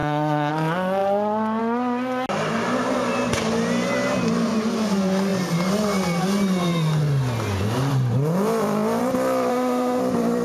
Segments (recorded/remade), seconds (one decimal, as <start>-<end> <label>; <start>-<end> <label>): 0.0-0.5 remade; 0.5-9.5 recorded; 9.5-10.0 remade; 10.0-10.4 recorded